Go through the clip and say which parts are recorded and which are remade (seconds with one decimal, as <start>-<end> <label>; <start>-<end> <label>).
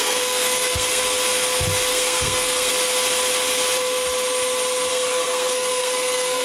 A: 0.0-1.0 remade; 1.0-1.9 recorded; 1.9-2.7 remade; 2.7-4.9 recorded; 4.9-6.4 remade